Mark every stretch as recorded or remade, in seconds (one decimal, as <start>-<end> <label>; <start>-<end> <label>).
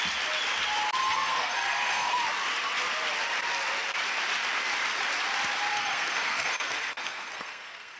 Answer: 0.0-1.0 recorded; 1.0-2.2 remade; 2.2-5.7 recorded; 5.7-8.0 remade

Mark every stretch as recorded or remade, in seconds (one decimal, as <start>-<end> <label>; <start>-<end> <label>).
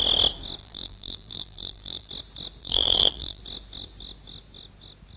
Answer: 0.0-0.6 recorded; 0.6-2.1 remade; 2.1-2.6 recorded; 2.6-3.4 remade; 3.4-5.2 recorded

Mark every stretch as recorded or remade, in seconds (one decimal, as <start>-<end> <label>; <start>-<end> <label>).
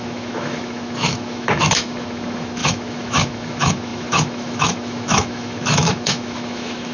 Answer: 0.0-6.9 remade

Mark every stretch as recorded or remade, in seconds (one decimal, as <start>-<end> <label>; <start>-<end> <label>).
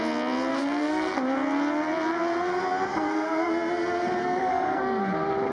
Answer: 0.0-0.5 recorded; 0.5-1.2 remade; 1.2-2.9 recorded; 2.9-3.5 remade; 3.5-4.2 recorded; 4.2-5.0 remade; 5.0-5.5 recorded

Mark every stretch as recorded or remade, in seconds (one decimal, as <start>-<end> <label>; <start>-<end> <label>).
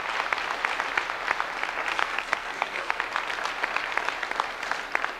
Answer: 0.0-1.9 recorded; 1.9-3.0 remade; 3.0-5.2 recorded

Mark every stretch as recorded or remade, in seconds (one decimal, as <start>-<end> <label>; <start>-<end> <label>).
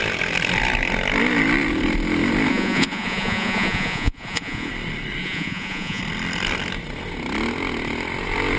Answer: 0.0-2.5 recorded; 2.5-4.7 remade; 4.7-5.2 recorded; 5.2-6.0 remade; 6.0-8.6 recorded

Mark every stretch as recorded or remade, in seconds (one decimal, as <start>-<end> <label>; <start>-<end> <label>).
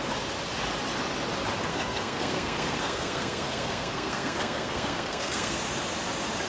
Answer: 0.0-1.7 recorded; 1.7-5.6 remade; 5.6-6.5 recorded